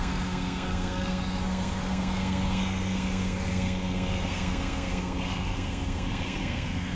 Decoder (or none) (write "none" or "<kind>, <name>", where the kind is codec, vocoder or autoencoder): codec, SNAC